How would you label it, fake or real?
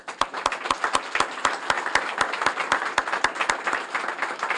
real